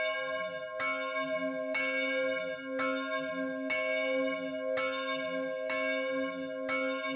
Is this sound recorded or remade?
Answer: recorded